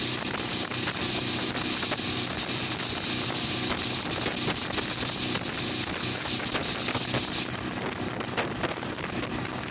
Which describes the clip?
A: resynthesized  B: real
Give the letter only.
B